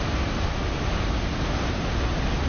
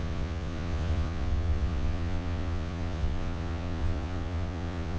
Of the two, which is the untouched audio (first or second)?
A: first